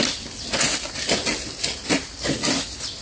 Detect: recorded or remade recorded